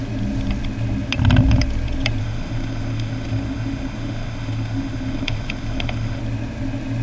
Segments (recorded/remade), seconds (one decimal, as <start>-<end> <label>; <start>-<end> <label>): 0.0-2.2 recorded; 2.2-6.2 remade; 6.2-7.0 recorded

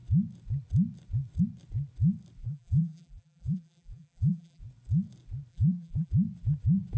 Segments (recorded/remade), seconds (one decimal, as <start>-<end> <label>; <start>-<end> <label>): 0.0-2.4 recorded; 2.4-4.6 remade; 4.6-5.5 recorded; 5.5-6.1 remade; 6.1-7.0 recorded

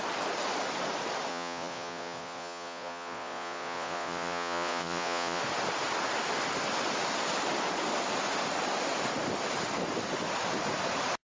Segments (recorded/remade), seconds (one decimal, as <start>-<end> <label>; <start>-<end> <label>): 0.0-1.3 recorded; 1.3-5.4 remade; 5.4-11.4 recorded

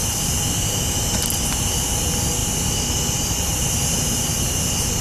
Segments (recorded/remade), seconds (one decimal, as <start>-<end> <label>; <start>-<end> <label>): 0.0-5.0 recorded

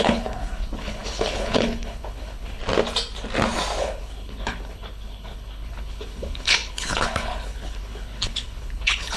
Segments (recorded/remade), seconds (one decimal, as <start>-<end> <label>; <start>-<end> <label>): 0.0-2.6 remade; 2.6-3.8 recorded; 3.8-9.2 remade

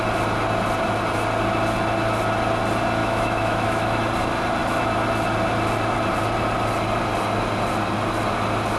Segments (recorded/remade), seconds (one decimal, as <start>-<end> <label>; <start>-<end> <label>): 0.0-3.0 recorded; 3.0-4.0 remade; 4.0-8.8 recorded